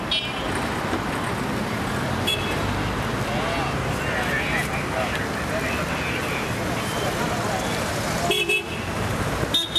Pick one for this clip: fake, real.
real